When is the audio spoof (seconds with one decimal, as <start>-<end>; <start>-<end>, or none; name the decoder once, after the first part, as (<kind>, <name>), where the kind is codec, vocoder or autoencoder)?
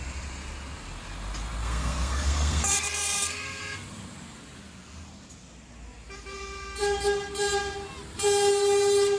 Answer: 1.6-3.6 (codec, SNAC)